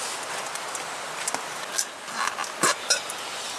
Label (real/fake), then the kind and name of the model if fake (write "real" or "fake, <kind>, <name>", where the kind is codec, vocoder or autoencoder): real